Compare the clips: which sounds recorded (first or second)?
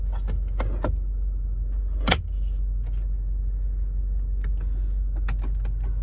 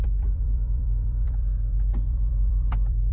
first